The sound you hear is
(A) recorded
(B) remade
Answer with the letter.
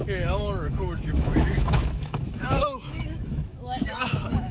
B